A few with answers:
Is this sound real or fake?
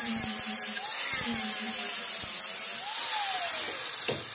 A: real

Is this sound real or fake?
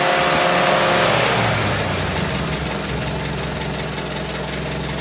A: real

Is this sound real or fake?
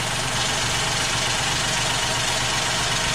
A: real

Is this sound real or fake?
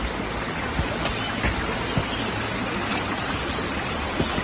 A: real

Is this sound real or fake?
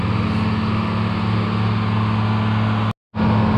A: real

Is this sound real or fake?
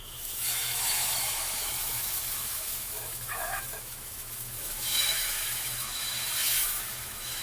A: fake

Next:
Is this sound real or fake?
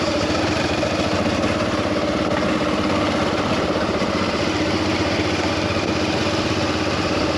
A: real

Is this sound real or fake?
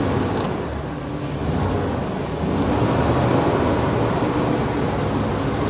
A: real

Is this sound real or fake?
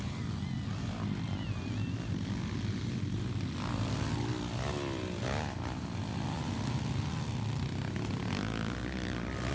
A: real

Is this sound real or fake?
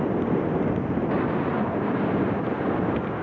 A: real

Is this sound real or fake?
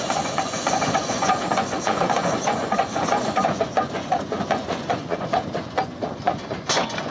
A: fake